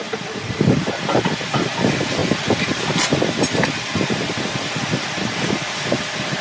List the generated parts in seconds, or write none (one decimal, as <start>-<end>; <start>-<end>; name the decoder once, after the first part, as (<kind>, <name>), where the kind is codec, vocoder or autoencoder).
2.2-3.1 (vocoder, BigVGAN v2)